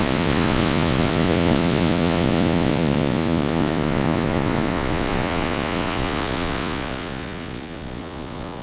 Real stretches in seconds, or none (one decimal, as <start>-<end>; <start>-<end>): none